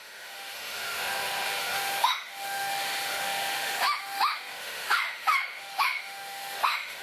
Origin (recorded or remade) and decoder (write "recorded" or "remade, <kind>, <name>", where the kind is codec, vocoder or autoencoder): remade, autoencoder, DAC-VAE